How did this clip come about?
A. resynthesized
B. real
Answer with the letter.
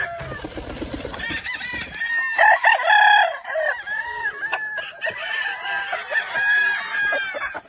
B